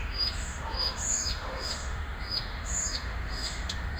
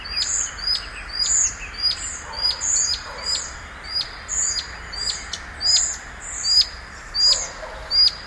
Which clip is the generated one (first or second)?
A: first